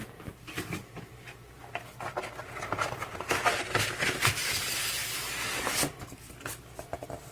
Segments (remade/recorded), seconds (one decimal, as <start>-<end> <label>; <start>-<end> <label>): 0.0-7.3 recorded